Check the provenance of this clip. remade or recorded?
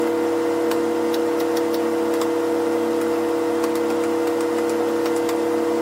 recorded